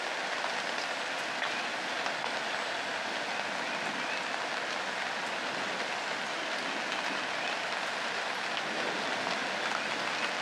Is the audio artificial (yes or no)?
no